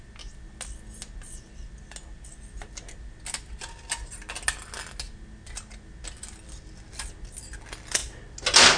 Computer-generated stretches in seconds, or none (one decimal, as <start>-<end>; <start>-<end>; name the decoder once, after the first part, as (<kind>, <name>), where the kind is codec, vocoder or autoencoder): none